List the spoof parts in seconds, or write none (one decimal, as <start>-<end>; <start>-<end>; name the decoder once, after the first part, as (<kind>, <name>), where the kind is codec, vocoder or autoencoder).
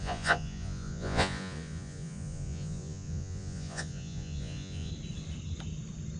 0.0-4.9 (vocoder, Vocos)